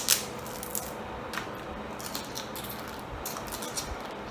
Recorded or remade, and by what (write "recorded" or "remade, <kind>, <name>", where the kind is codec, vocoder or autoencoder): recorded